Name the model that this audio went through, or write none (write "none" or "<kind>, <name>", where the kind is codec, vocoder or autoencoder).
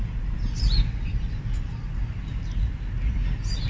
none